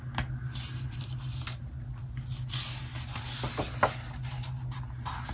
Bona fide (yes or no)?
yes